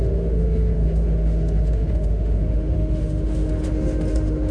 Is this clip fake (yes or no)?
yes